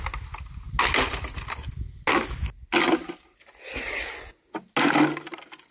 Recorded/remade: recorded